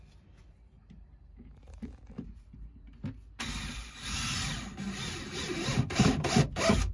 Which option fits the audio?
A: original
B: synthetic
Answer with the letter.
A